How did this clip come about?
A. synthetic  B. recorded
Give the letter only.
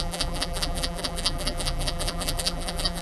A